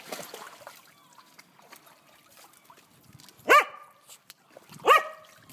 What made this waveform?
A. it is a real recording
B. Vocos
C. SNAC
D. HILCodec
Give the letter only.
A